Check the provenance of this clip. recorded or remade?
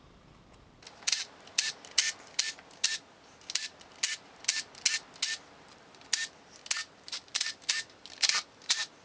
recorded